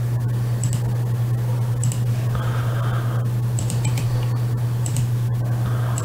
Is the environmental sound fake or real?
real